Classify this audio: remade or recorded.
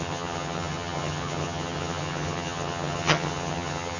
remade